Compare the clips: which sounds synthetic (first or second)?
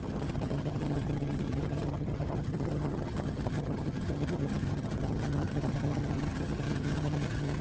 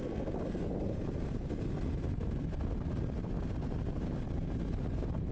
first